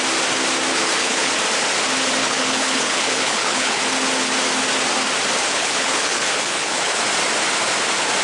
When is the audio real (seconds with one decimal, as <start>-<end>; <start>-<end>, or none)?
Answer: 0.0-0.7; 1.3-2.2; 3.8-5.4; 7.0-8.2